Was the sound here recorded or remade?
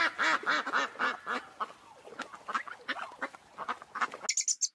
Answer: recorded